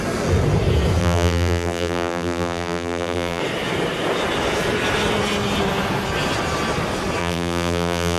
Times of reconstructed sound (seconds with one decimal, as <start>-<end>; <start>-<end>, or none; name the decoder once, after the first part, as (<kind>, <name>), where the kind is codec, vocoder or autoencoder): 1.0-3.4 (vocoder, BigVGAN v2); 7.2-8.2